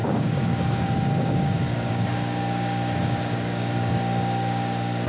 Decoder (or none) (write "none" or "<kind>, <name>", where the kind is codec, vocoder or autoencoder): codec, DAC